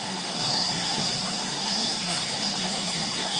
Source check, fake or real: fake